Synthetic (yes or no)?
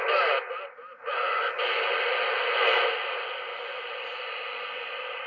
no